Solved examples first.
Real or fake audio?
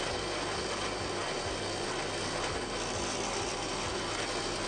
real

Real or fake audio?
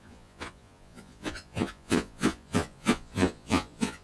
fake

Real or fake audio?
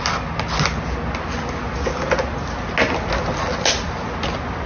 real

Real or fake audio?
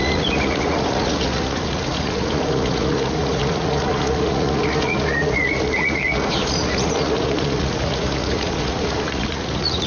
fake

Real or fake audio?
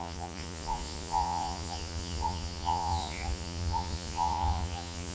fake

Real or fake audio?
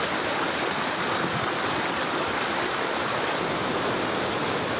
real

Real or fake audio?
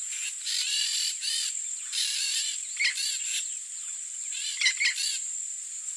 real